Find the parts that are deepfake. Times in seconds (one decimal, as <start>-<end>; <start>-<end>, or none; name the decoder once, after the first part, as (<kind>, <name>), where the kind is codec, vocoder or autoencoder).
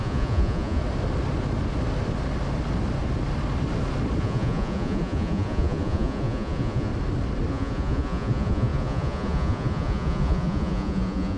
0.0-0.8 (vocoder, Vocos); 4.2-6.9; 7.5-11.4